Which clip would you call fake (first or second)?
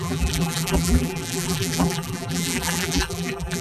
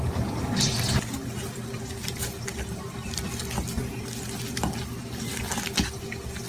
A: first